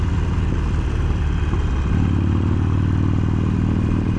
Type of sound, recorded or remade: recorded